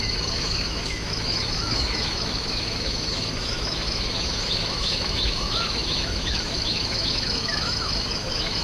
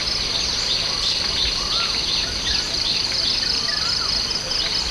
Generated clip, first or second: first